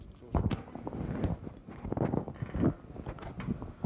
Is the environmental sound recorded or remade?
recorded